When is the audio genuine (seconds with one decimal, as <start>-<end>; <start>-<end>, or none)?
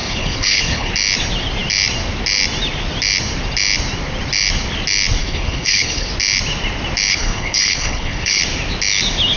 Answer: 0.9-5.2; 6.1-7.1; 8.4-9.4